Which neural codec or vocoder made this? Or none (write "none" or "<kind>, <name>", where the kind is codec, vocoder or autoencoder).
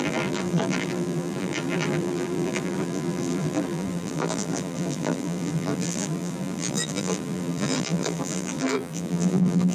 vocoder, BigVGAN v2